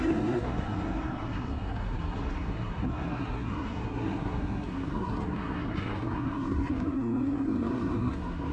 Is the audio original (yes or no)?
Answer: no